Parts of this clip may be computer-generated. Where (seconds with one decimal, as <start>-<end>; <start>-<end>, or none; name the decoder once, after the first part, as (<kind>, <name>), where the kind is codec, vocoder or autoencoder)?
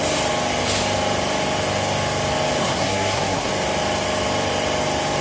2.6-3.5 (codec, SNAC)